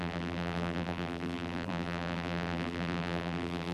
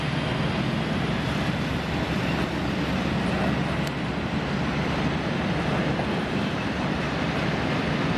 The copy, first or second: first